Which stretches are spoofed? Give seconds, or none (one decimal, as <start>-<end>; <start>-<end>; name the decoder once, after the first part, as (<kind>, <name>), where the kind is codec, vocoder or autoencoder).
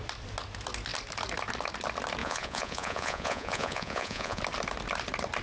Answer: 2.2-4.4 (vocoder, Vocos)